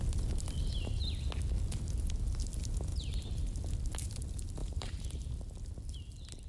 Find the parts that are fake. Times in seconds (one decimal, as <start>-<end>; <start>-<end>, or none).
2.9-3.6; 4.6-5.3